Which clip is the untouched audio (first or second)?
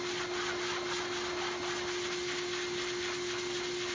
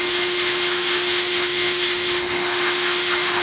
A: first